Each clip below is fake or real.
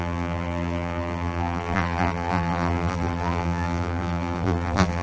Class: fake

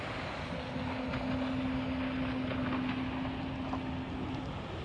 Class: real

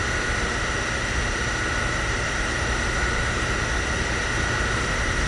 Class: real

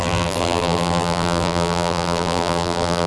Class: fake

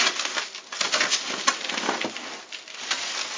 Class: real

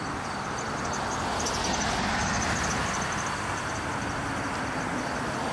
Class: real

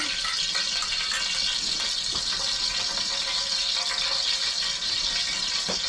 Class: real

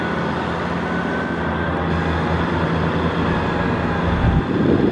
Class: real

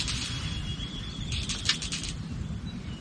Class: real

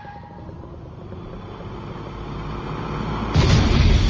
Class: real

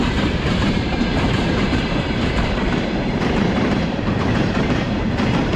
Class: fake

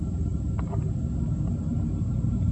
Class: real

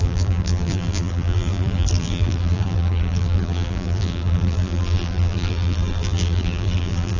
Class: fake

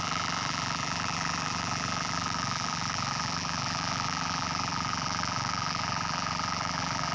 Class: fake